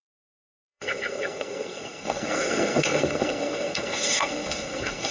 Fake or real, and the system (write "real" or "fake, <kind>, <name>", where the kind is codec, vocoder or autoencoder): fake, codec, SNAC